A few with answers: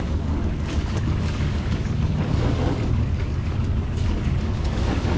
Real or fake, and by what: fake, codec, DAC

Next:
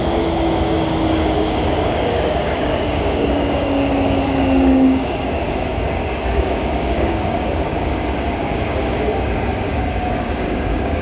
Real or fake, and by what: fake, codec, DAC